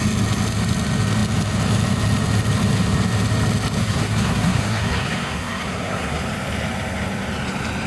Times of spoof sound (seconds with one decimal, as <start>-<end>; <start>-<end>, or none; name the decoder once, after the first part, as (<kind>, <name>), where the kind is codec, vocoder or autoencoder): 3.8-6.2 (codec, SNAC)